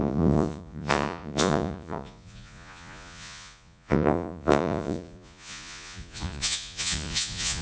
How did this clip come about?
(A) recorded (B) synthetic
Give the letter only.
B